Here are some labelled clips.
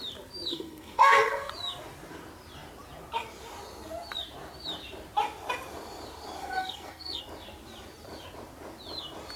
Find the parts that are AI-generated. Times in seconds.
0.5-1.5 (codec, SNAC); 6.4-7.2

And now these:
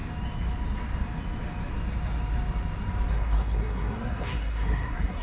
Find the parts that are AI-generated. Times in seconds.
3.1-5.2 (codec, SNAC)

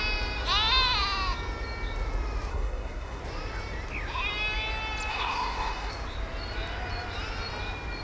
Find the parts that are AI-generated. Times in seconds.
2.5-3.2 (codec, SNAC); 5.1-5.9

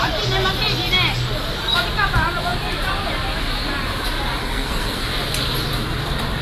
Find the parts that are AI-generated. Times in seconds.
4.4-5.1 (codec, SNAC)

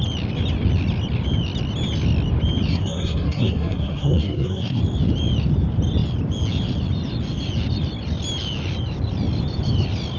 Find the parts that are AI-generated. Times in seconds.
2.7-4.8 (codec, SNAC)

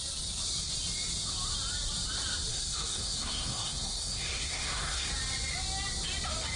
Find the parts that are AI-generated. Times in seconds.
2.5-5.1 (codec, SNAC)